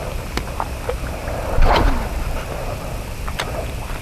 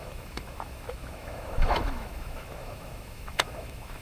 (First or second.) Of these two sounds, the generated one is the second